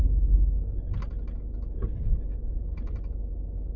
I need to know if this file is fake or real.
real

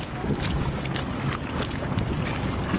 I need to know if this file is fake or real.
fake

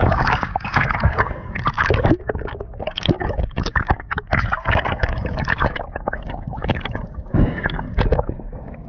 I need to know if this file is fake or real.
fake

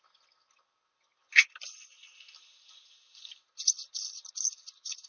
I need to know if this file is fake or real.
real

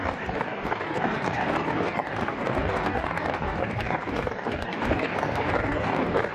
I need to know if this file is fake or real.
fake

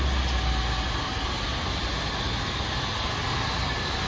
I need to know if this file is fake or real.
real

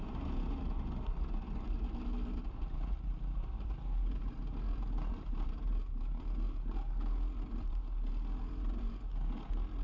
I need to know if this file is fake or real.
real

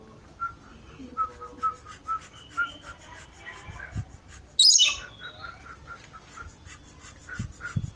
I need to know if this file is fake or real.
real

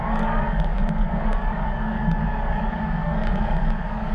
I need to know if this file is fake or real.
fake